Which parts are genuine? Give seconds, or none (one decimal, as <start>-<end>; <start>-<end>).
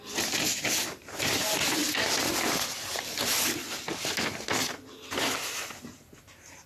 0.0-6.7